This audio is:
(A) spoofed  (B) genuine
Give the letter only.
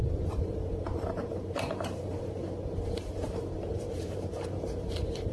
A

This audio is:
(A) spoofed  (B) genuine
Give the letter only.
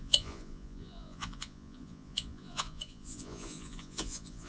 A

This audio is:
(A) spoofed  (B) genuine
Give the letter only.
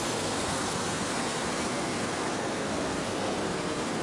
A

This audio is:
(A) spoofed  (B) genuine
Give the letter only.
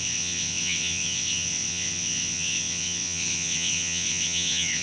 A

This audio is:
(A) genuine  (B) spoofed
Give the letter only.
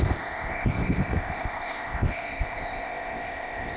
B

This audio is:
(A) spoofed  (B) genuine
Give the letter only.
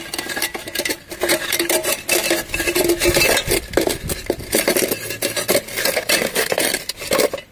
B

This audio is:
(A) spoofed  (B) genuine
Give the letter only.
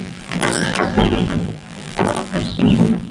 A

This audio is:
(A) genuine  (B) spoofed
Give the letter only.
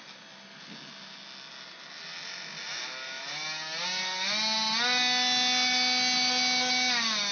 A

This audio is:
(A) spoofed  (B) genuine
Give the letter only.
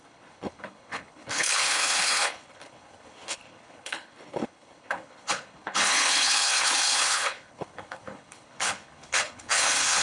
A